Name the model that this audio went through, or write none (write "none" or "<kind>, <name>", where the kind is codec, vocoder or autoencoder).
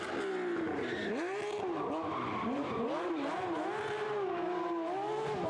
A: none